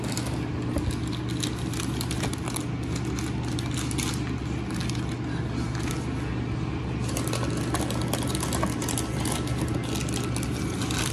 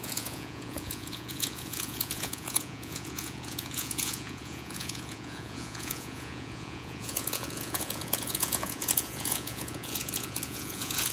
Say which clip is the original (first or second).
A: first